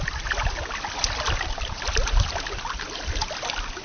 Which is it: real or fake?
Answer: fake